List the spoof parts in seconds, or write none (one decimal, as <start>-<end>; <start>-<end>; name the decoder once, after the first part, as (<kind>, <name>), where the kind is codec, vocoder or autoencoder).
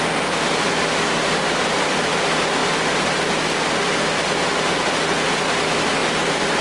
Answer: none